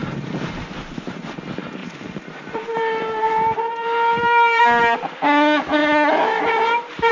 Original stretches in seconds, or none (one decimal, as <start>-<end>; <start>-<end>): 1.4-1.8; 4.6-7.1